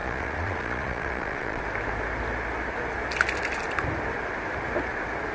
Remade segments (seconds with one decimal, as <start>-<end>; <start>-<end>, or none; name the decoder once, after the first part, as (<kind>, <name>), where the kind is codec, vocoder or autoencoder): 0.0-1.6 (vocoder, Vocos)